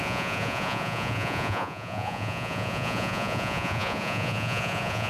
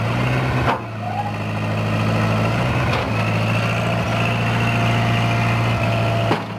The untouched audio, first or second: second